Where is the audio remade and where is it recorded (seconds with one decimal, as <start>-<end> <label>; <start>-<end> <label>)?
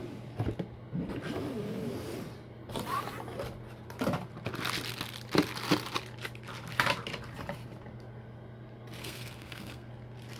0.0-9.0 recorded; 9.0-9.9 remade; 9.9-10.4 recorded